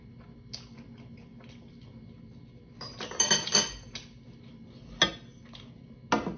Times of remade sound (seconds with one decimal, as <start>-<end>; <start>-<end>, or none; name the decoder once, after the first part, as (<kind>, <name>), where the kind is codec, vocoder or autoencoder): none